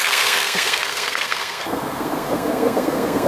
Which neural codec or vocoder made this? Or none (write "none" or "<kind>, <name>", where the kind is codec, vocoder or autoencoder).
codec, SNAC